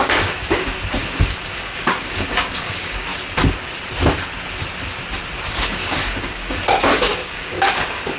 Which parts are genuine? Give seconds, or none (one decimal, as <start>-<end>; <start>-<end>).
3.1-5.5